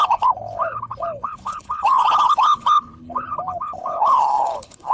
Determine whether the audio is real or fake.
fake